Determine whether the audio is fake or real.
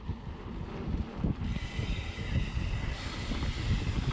real